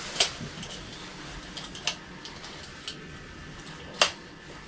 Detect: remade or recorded recorded